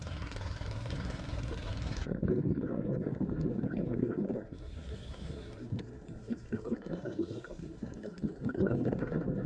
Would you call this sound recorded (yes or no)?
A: no